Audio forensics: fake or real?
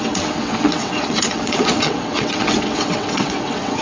fake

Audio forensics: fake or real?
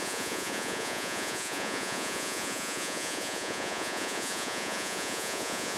fake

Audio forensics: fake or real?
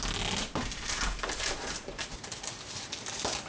real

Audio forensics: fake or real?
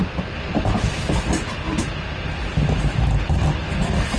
real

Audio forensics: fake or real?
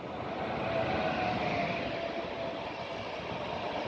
real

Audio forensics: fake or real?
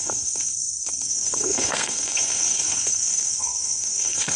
fake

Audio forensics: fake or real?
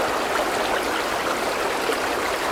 real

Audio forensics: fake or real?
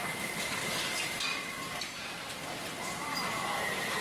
real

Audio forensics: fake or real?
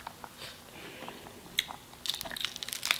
real